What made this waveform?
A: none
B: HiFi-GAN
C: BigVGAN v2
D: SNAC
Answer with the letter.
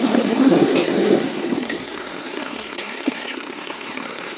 D